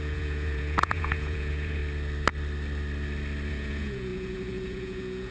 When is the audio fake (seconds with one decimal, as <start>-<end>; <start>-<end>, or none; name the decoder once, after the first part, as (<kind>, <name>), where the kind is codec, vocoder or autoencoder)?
0.0-1.8 (vocoder, Vocos); 3.5-5.3